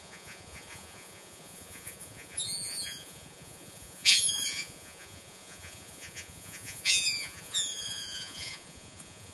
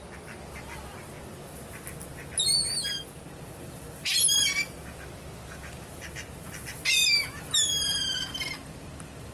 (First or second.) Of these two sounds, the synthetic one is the first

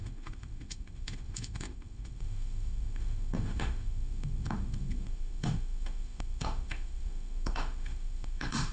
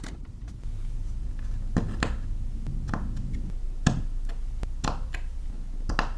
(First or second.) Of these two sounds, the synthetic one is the first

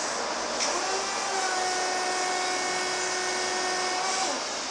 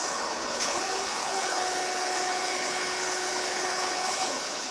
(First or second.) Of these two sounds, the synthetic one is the second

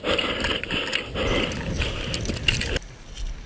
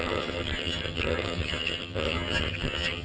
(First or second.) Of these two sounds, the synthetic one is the second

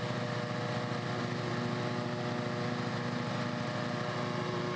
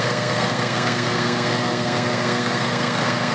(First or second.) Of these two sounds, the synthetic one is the second